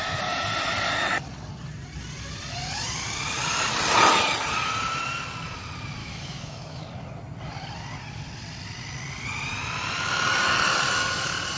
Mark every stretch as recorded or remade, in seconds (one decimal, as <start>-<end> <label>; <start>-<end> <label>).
0.0-6.0 recorded; 6.0-6.8 remade; 6.8-11.6 recorded